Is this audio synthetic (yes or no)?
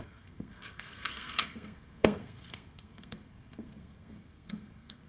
yes